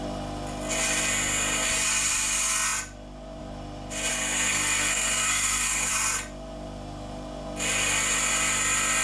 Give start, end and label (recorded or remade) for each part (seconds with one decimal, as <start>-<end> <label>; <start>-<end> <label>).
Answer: 0.0-4.1 recorded; 4.1-5.9 remade; 5.9-9.0 recorded